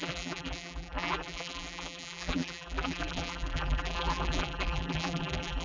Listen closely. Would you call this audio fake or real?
fake